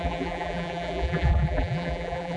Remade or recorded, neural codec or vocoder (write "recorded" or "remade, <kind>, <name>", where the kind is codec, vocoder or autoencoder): remade, vocoder, BigVGAN v2